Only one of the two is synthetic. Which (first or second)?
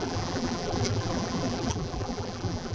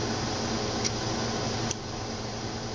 first